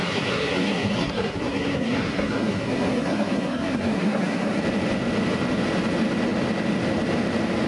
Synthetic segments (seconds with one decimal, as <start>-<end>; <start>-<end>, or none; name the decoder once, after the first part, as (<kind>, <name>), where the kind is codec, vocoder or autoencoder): 0.0-4.6 (codec, SNAC)